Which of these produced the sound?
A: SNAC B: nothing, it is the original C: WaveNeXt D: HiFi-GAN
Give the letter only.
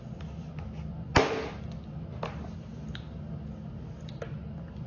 B